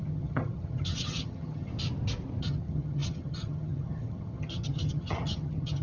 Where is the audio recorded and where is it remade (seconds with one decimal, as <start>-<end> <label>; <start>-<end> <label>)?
0.0-1.7 remade; 1.7-2.4 recorded; 2.4-5.8 remade